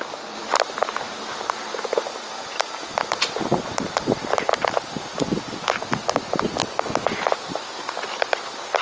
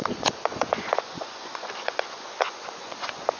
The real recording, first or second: first